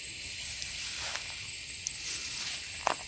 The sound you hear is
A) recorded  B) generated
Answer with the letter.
A